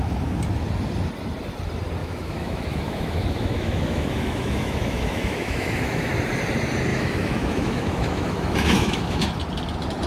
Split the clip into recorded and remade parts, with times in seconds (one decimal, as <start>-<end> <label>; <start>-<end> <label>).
0.0-2.0 recorded; 2.0-6.1 remade; 6.1-6.9 recorded; 6.9-9.3 remade; 9.3-10.1 recorded